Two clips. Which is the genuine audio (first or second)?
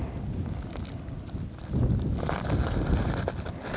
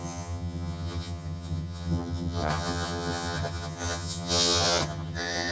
first